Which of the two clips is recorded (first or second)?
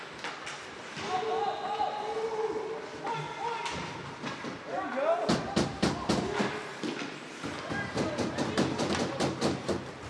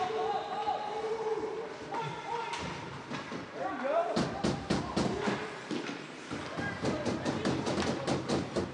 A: first